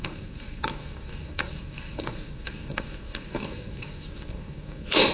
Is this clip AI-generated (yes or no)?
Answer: yes